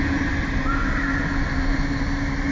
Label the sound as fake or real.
real